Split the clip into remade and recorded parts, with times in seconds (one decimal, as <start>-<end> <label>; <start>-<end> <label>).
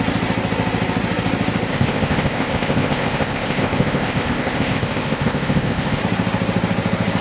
0.0-1.7 recorded; 1.7-6.0 remade; 6.0-7.2 recorded